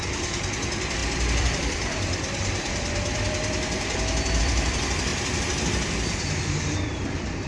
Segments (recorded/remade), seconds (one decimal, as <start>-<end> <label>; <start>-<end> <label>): 0.0-5.1 remade; 5.1-6.4 recorded; 6.4-7.5 remade